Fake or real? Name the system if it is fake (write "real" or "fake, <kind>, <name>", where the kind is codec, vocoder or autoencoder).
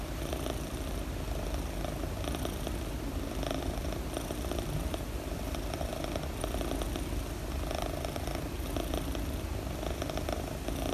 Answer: real